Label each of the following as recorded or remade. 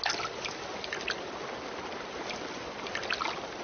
recorded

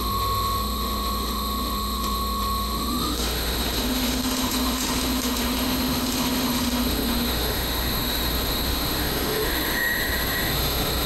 remade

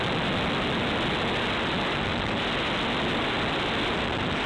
recorded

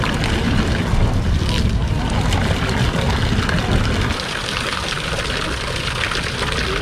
recorded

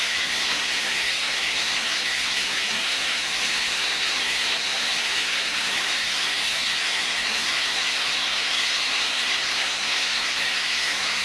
remade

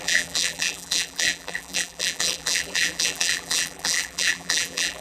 remade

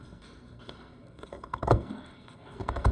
remade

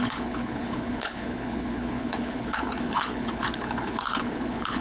remade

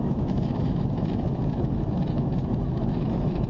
remade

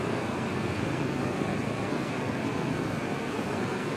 remade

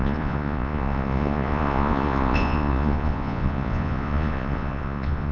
remade